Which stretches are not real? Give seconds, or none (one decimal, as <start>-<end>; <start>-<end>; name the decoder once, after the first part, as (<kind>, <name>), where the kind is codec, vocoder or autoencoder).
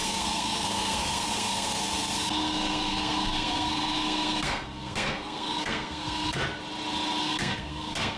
0.0-6.4 (codec, SNAC); 7.2-8.2